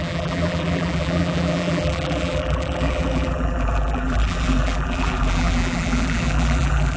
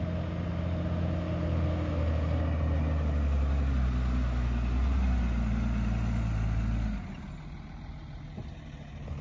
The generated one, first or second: first